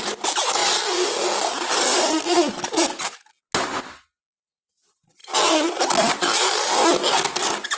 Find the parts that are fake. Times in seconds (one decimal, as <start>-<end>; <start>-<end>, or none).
none